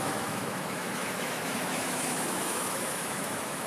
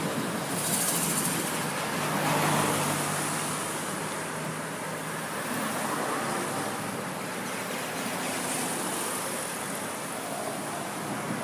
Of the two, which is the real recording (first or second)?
second